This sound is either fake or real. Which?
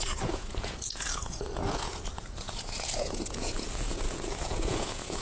fake